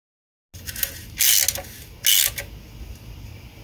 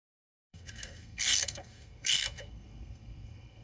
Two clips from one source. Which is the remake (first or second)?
second